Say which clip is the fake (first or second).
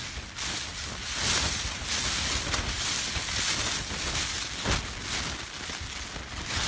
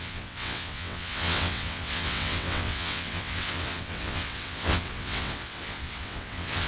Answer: second